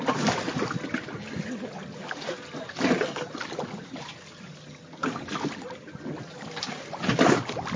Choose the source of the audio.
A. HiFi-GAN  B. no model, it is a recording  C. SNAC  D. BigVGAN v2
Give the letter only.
B